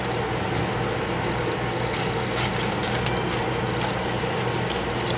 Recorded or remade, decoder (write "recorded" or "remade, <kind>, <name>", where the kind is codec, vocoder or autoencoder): recorded